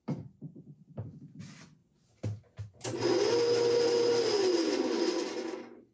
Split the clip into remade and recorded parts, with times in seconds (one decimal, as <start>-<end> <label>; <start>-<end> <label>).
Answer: 0.0-5.9 recorded